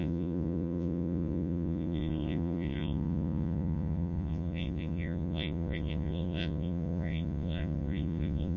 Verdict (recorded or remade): remade